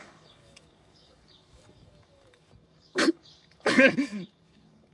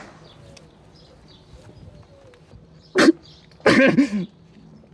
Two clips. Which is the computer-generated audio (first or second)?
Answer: first